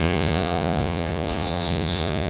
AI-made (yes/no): yes